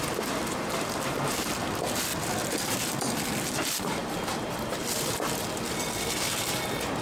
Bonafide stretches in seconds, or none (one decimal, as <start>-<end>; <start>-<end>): 2.1-2.6

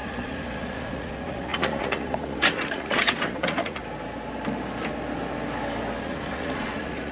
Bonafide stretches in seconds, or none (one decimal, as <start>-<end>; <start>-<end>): 3.8-6.0

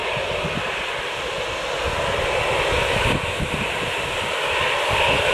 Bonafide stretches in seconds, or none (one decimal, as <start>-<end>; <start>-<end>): 0.0-5.3

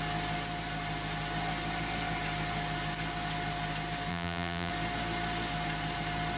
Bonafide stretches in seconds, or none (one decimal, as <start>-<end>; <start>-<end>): 0.0-4.1; 4.7-6.4

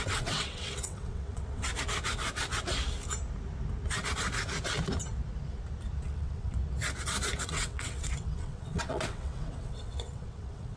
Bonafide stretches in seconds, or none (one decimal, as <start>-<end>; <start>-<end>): 1.7-6.0; 6.6-7.4